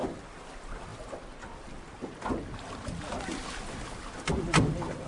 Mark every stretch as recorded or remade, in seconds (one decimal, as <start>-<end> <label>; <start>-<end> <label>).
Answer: 0.0-5.1 recorded